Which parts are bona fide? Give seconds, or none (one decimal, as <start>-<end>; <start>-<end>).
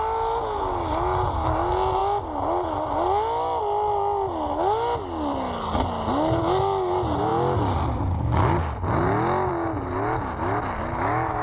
0.0-11.4